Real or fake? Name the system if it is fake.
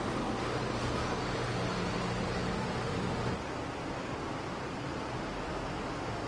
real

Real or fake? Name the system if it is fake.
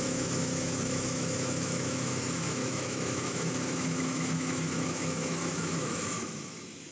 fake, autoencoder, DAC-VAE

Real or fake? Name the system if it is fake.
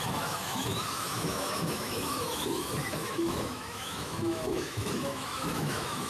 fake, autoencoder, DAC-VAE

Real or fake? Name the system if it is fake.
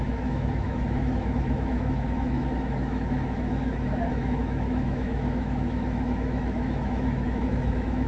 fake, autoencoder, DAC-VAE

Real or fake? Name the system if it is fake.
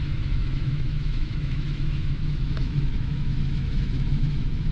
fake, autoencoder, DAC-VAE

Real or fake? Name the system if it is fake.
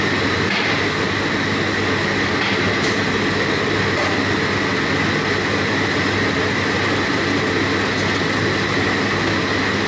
real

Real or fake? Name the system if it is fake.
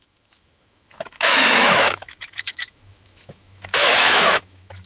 fake, autoencoder, DAC-VAE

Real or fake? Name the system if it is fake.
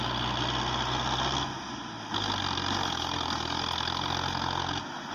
real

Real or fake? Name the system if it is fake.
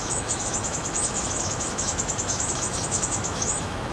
fake, autoencoder, DAC-VAE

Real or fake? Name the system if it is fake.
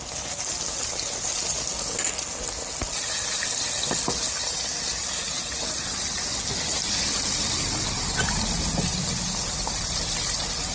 real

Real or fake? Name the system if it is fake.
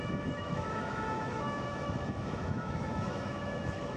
fake, autoencoder, DAC-VAE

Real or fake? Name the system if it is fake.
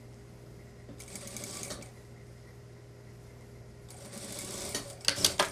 real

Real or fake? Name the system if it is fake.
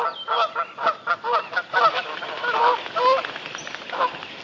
real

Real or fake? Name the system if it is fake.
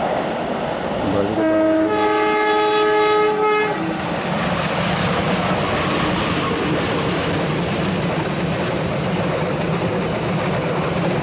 real